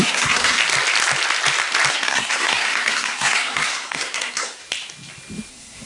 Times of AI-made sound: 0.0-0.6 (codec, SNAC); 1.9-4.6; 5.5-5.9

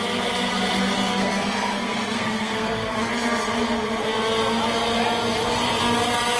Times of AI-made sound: 1.1-3.1 (codec, SNAC)

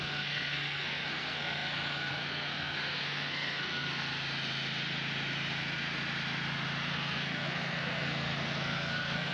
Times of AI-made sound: 0.0-4.1 (codec, SNAC); 6.9-9.3

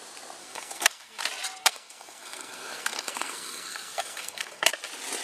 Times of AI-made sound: 0.4-1.2 (codec, SNAC); 1.6-4.7

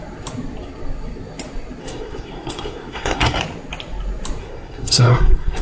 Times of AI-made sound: 1.8-3.4 (codec, SNAC); 4.4-5.6